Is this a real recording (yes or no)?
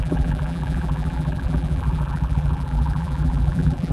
no